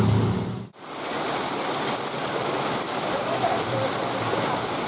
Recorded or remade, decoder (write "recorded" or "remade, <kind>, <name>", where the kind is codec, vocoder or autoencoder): recorded